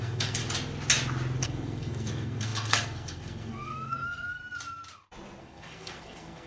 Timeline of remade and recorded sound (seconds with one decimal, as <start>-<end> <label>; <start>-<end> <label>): 0.0-0.4 remade; 0.4-1.4 recorded; 1.4-4.4 remade; 4.4-5.4 recorded; 5.4-6.5 remade